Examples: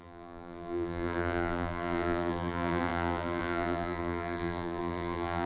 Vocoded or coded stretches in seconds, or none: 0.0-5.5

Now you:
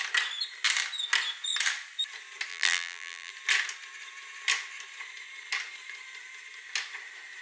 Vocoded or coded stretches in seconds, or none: 2.5-3.3